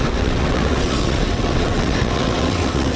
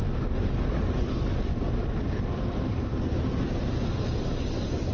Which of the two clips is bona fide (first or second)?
second